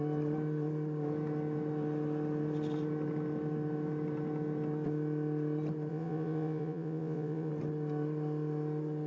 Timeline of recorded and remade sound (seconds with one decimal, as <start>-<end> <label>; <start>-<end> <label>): 0.0-5.9 recorded; 5.9-7.5 remade; 7.5-9.1 recorded